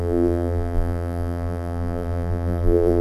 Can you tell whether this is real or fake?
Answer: fake